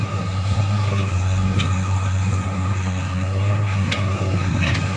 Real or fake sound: fake